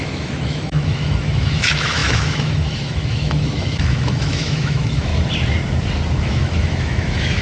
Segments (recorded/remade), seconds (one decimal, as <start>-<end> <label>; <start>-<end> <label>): 0.0-5.1 remade; 5.1-6.2 recorded; 6.2-7.4 remade